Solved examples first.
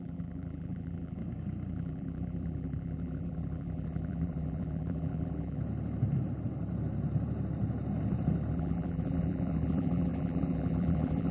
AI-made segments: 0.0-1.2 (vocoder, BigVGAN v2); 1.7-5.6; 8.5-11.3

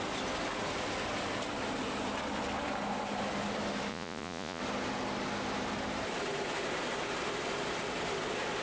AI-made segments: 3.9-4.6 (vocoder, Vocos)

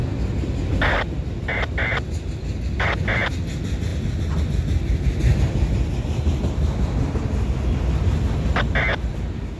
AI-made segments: 9.1-9.6 (vocoder, BigVGAN v2)

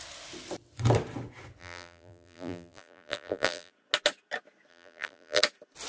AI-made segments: 1.6-3.7 (vocoder, BigVGAN v2); 4.7-5.4

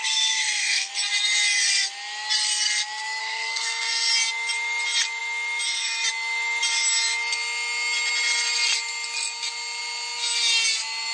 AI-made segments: 0.0-0.9 (codec, SNAC); 3.2-4.1

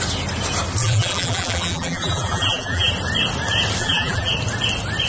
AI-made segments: 0.8-2.9 (vocoder, BigVGAN v2); 3.8-4.3